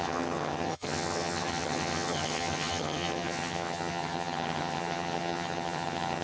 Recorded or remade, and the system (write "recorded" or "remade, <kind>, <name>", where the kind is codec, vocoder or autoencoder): remade, vocoder, HiFi-GAN